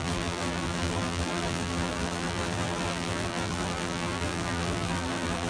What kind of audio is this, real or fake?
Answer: fake